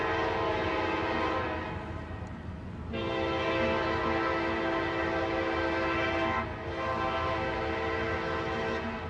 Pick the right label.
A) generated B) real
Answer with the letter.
B